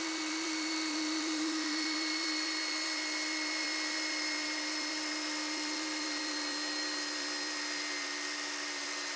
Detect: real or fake fake